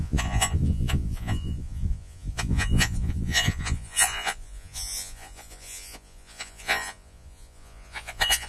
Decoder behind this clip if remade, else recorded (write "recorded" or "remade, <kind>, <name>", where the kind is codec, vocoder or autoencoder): remade, vocoder, Vocos